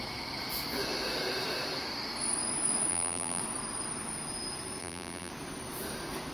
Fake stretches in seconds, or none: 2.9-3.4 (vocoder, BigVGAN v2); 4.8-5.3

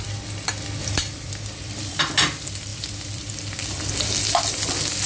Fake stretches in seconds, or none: 0.8-2.0 (vocoder, BigVGAN v2); 2.7-3.3

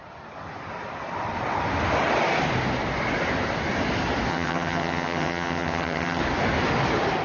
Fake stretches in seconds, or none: 4.3-6.2 (vocoder, HiFi-GAN)

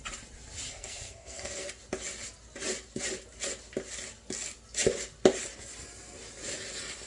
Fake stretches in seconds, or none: 0.7-1.7 (codec, SNAC)

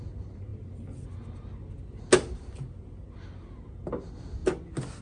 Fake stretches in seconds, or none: none